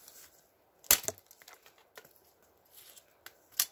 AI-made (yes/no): no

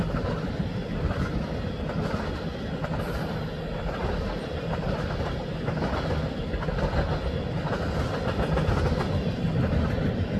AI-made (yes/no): no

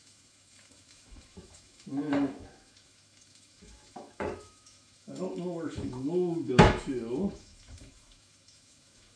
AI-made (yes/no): yes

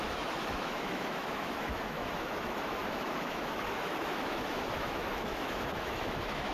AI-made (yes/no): yes